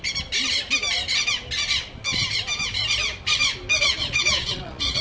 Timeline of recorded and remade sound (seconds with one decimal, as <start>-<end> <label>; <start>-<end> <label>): 0.0-4.0 recorded; 4.0-5.0 remade